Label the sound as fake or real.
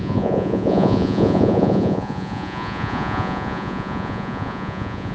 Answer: fake